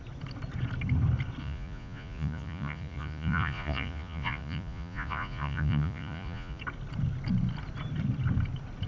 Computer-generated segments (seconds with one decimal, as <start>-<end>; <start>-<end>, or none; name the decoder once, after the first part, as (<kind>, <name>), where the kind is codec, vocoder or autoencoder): 1.4-6.6 (vocoder, Vocos)

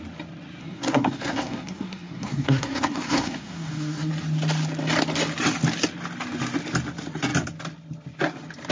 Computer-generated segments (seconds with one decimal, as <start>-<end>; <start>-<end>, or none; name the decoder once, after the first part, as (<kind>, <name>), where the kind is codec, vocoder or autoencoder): 0.6-4.1 (codec, SNAC)

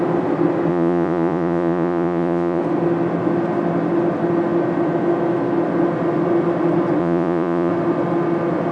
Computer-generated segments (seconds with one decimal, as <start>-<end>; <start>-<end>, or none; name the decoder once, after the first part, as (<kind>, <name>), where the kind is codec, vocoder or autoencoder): 0.7-2.6 (vocoder, Vocos); 7.0-7.7

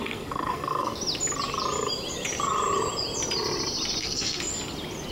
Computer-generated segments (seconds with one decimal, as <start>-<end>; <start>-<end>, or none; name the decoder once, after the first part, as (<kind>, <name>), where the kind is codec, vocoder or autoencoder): 0.0-0.9 (codec, SNAC); 4.0-4.5

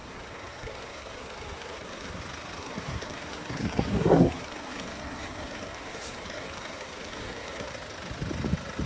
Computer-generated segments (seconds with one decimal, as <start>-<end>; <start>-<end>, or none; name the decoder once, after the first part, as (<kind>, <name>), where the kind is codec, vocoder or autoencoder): 0.0-2.2 (codec, SNAC); 2.6-7.7

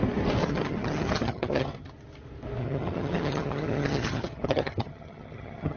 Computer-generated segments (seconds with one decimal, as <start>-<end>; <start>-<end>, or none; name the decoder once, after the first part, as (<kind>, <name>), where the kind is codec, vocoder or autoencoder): 0.4-1.9 (vocoder, HiFi-GAN); 2.6-5.8

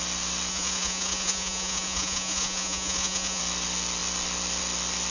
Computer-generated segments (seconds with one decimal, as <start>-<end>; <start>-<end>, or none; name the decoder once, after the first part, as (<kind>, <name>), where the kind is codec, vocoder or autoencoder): 0.5-3.4 (vocoder, Vocos)